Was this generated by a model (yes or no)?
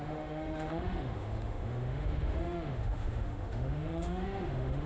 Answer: yes